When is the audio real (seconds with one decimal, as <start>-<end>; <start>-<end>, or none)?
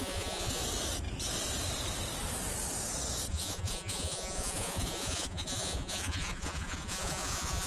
0.6-3.3